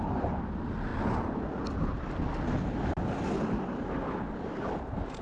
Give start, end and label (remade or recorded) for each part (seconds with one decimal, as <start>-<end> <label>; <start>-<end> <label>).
0.0-5.2 recorded